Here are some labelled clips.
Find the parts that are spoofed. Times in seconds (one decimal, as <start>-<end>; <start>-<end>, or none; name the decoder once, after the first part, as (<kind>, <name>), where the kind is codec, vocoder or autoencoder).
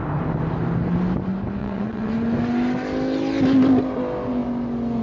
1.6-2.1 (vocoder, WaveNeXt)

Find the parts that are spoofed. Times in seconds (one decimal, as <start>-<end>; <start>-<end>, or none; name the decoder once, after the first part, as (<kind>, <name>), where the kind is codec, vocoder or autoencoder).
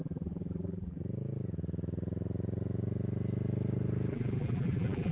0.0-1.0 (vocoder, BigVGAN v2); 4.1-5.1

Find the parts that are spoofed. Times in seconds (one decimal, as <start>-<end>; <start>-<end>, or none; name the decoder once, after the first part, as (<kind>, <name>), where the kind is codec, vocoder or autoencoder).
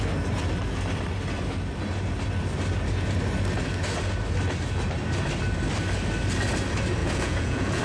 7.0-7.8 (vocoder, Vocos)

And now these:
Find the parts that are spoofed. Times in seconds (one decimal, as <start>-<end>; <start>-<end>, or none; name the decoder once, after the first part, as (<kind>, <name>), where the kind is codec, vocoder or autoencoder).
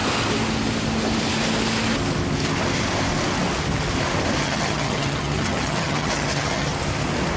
4.4-6.7 (vocoder, HiFi-GAN)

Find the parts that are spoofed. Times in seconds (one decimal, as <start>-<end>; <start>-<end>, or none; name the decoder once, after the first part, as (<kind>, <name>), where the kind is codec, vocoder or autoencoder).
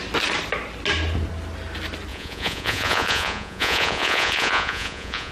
2.1-5.3 (vocoder, Vocos)